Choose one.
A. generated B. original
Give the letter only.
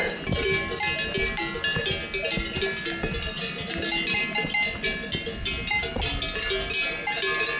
B